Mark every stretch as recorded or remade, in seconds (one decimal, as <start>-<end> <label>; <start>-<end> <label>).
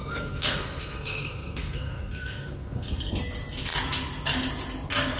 0.0-3.1 remade; 3.1-5.2 recorded